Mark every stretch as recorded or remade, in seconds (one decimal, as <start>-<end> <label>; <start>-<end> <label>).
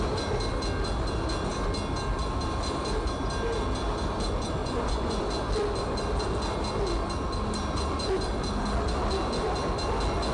0.0-4.6 recorded; 4.6-5.2 remade; 5.2-10.3 recorded